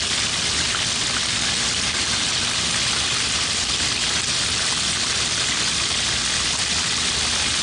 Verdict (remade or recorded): recorded